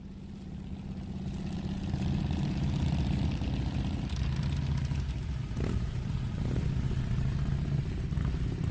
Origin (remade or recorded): recorded